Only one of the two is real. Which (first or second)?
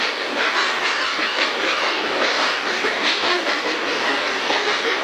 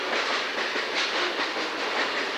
second